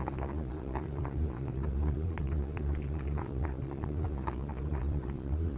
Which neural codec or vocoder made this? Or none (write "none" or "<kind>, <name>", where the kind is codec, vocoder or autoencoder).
vocoder, Vocos